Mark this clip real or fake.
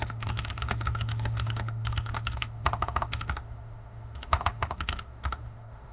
fake